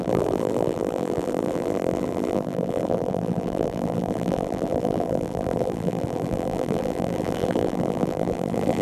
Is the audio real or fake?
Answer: fake